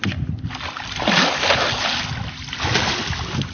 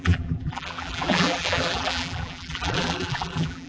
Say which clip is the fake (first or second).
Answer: second